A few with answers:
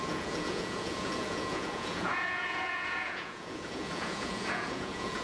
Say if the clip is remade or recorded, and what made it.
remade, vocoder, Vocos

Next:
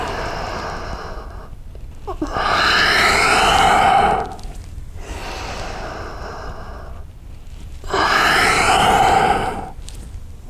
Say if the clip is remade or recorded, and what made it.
recorded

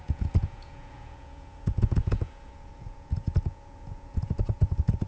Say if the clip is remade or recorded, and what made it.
remade, vocoder, Vocos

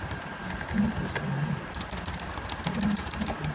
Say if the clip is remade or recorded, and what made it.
recorded